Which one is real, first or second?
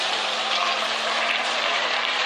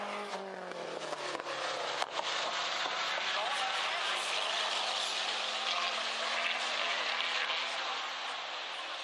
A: second